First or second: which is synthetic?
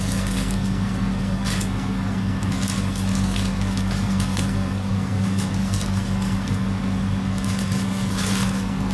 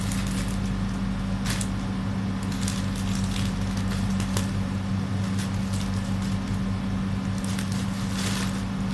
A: first